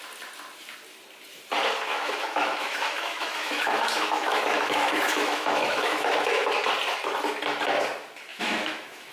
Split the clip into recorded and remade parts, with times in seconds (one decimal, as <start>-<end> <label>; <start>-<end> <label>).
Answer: 0.0-1.9 recorded; 1.9-6.5 remade; 6.5-8.3 recorded; 8.3-9.1 remade